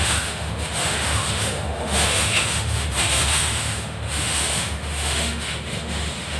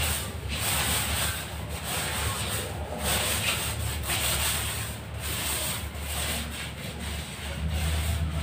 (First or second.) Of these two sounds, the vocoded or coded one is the first